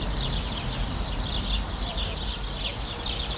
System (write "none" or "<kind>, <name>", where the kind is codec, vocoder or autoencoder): none